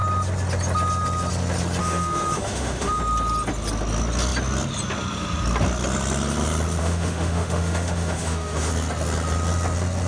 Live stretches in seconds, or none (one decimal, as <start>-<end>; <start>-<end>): 0.0-1.8; 3.0-6.8; 8.7-10.1